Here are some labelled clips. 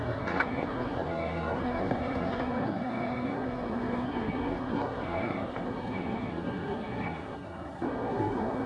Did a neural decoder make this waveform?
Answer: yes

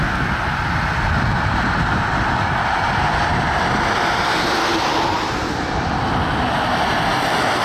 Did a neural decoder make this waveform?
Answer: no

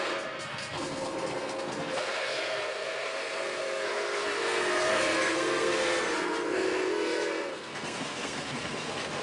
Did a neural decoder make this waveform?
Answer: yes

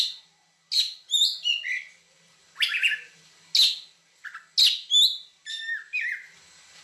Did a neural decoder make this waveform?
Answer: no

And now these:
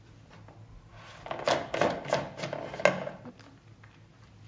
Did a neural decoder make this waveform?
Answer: no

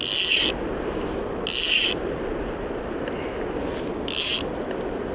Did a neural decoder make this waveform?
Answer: no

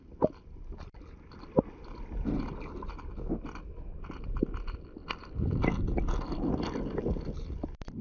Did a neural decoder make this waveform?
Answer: no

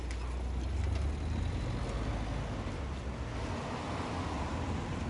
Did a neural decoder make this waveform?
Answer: no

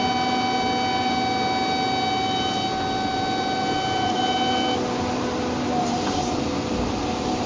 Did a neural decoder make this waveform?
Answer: no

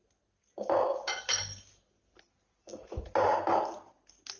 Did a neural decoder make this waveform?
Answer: no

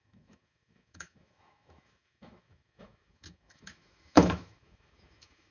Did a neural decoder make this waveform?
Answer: yes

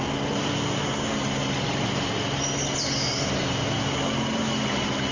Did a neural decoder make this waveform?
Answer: no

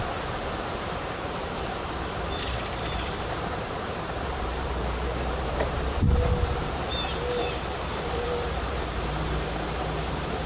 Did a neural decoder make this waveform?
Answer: yes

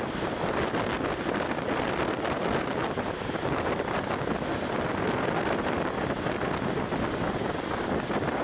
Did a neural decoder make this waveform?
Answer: no